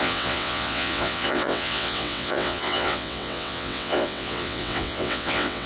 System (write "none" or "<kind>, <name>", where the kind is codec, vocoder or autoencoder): vocoder, WaveNeXt